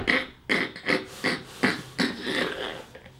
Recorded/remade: recorded